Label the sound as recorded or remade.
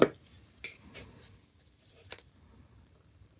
remade